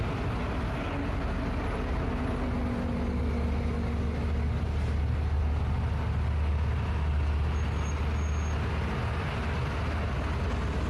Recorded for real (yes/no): yes